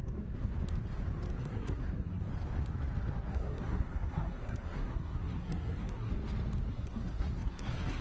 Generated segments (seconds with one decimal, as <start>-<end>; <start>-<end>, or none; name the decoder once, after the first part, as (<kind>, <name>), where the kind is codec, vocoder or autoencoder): 0.0-0.6 (codec, SNAC); 1.4-2.3; 3.3-6.1; 6.7-8.0